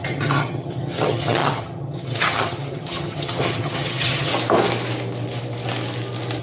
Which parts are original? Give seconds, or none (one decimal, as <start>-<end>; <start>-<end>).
4.3-6.4